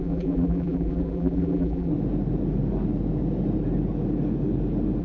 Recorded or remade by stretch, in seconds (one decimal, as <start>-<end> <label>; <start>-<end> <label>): 0.0-1.9 remade; 1.9-5.0 recorded